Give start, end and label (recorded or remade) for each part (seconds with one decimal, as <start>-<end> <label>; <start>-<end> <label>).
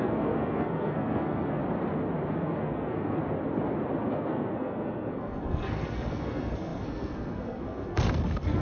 0.0-1.6 remade; 1.6-2.3 recorded; 2.3-3.2 remade; 3.2-4.0 recorded; 4.0-8.6 remade